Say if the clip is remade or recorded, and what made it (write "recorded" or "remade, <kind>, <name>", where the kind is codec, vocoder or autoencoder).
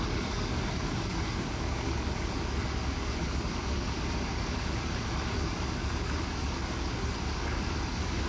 remade, codec, DAC